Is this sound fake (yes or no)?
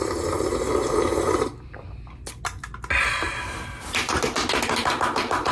no